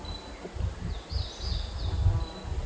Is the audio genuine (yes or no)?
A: yes